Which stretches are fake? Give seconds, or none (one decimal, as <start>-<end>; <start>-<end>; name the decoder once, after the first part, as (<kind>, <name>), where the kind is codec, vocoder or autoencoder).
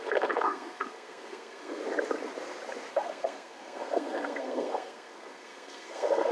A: 0.0-1.8 (codec, SNAC); 2.9-6.3